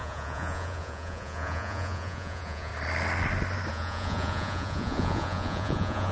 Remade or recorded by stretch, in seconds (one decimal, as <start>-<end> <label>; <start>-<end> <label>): 0.0-2.7 remade; 2.7-3.7 recorded; 3.7-6.1 remade